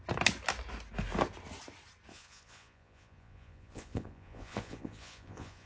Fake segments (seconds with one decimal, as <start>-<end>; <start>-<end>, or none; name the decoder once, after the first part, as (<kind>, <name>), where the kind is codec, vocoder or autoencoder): 2.1-5.7 (vocoder, Vocos)

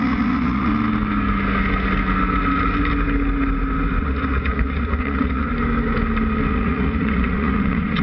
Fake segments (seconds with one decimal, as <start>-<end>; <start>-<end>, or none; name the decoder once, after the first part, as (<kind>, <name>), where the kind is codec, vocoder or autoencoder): 0.0-0.7 (vocoder, Vocos); 4.0-5.5; 6.5-8.0

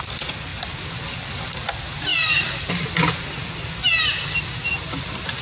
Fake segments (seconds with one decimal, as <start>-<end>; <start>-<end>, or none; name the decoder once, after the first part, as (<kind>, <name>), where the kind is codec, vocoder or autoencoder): none

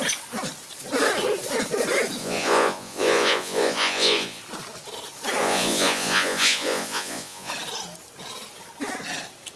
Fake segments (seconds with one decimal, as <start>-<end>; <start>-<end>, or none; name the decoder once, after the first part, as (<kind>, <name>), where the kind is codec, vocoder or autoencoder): 2.2-4.4 (vocoder, Vocos); 5.4-7.5

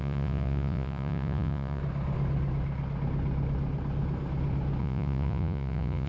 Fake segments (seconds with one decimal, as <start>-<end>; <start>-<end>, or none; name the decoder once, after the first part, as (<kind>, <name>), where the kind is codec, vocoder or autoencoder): 0.0-1.8 (vocoder, Vocos); 4.8-6.1